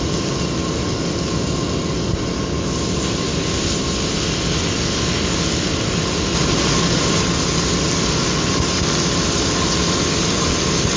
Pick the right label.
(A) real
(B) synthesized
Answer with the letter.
A